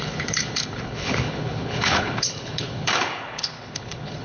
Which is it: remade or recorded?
remade